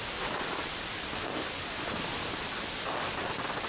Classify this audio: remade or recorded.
recorded